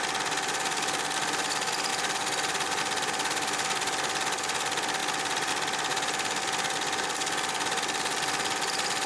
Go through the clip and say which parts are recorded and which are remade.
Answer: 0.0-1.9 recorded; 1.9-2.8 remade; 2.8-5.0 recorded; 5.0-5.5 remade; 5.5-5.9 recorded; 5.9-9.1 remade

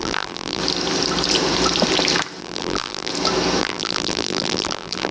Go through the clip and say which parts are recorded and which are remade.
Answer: 0.0-0.6 remade; 0.6-2.4 recorded; 2.4-3.1 remade; 3.1-3.6 recorded; 3.6-5.1 remade

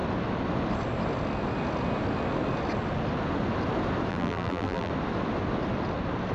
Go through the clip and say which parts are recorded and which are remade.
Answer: 0.0-4.1 recorded; 4.1-4.9 remade; 4.9-6.3 recorded

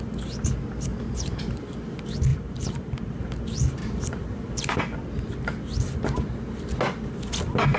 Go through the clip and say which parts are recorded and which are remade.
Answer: 0.0-0.9 recorded; 0.9-1.4 remade; 1.4-2.3 recorded; 2.3-3.1 remade; 3.1-3.8 recorded; 3.8-4.8 remade; 4.8-7.8 recorded

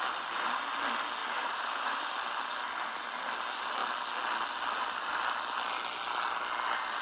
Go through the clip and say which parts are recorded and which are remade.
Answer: 0.0-1.2 recorded; 1.2-2.1 remade; 2.1-7.0 recorded

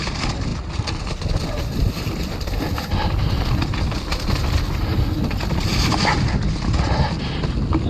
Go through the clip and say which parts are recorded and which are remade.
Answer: 0.0-7.9 recorded

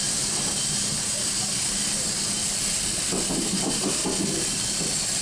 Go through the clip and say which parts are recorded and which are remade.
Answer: 0.0-2.4 remade; 2.4-3.3 recorded; 3.3-4.0 remade; 4.0-5.2 recorded

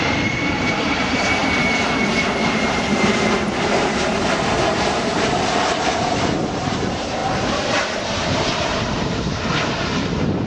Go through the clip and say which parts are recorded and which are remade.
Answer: 0.0-10.5 remade